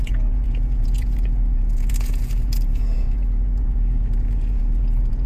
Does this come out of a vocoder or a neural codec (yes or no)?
yes